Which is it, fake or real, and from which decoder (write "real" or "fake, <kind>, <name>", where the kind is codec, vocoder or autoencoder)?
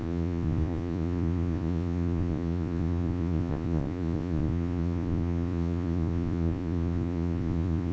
fake, vocoder, Vocos